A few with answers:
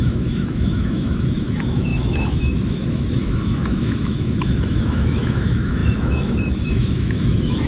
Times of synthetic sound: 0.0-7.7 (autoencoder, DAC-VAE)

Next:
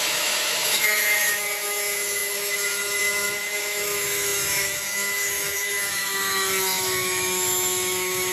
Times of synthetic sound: 0.0-8.3 (autoencoder, DAC-VAE)

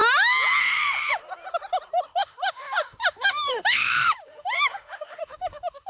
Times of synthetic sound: 0.6-1.2 (autoencoder, DAC-VAE); 2.1-5.9

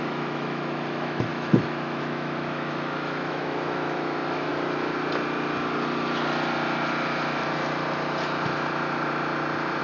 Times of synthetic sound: 0.0-4.5 (autoencoder, DAC-VAE)

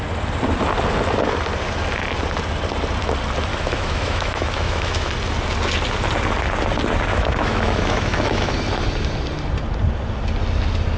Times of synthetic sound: 3.5-5.1 (autoencoder, DAC-VAE); 7.1-8.5

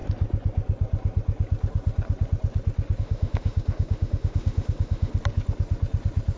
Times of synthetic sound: 3.0-5.1 (autoencoder, DAC-VAE)